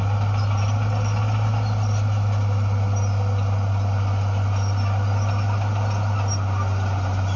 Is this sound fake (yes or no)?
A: no